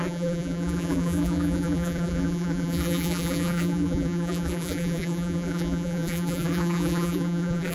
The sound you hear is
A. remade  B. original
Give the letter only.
A